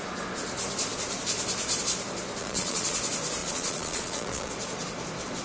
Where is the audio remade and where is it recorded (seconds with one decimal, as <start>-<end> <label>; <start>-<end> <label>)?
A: 0.0-2.4 recorded; 2.4-3.0 remade; 3.0-3.4 recorded; 3.4-4.5 remade; 4.5-5.4 recorded